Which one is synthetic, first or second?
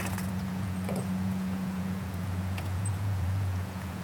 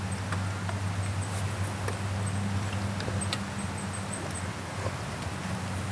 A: first